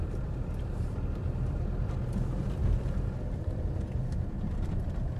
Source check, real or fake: fake